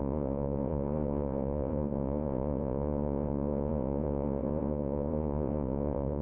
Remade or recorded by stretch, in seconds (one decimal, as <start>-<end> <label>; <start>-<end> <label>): 0.0-6.2 remade